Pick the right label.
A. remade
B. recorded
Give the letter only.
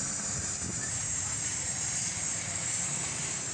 A